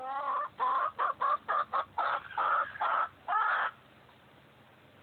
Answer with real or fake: real